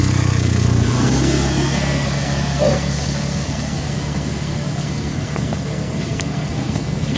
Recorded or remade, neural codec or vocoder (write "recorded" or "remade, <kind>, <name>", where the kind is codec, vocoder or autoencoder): remade, codec, SNAC